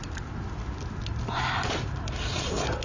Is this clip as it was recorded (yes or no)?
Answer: yes